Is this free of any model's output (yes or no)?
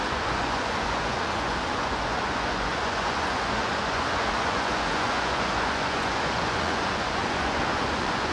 no